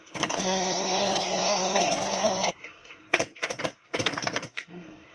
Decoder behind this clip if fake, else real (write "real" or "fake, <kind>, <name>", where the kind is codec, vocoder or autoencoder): fake, codec, SNAC